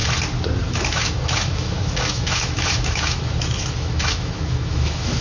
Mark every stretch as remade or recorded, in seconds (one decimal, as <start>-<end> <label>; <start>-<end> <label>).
0.0-0.6 recorded; 0.6-5.2 remade